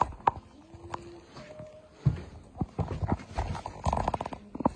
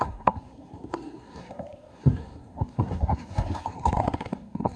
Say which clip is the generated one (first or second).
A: second